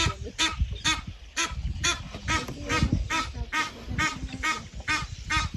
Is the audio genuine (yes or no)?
yes